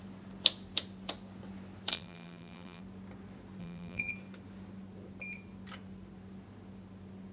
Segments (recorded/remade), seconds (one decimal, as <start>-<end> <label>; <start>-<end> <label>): 0.0-1.9 recorded; 1.9-2.8 remade; 2.8-3.6 recorded; 3.6-4.1 remade; 4.1-7.3 recorded